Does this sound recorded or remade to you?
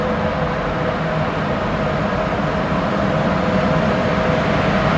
recorded